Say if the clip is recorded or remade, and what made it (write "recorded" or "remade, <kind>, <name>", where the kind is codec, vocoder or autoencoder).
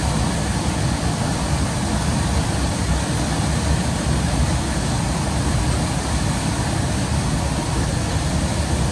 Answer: recorded